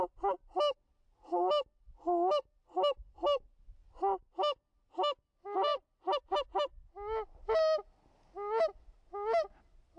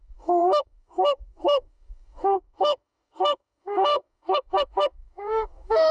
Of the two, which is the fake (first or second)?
second